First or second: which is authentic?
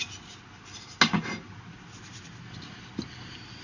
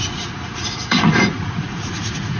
first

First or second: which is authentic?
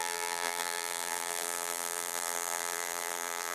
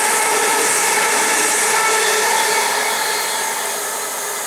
second